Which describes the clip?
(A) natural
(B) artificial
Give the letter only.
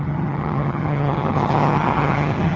B